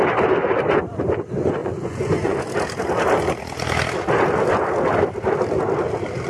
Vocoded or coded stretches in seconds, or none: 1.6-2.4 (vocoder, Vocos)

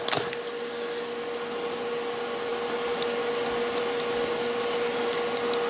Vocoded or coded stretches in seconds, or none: none

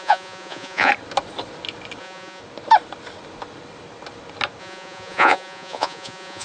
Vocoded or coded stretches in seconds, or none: 0.0-0.9 (vocoder, Vocos); 2.0-2.4; 4.6-6.4

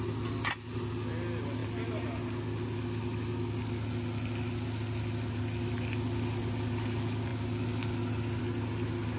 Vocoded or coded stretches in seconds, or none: none

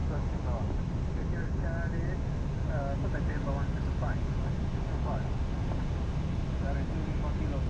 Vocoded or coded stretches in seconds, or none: none

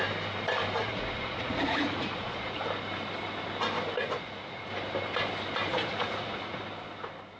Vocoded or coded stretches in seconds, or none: 0.8-2.6 (vocoder, Vocos); 4.0-4.7; 5.7-6.6

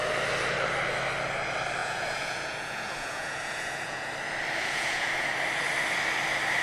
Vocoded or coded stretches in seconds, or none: 1.8-4.1 (vocoder, Vocos); 4.6-5.3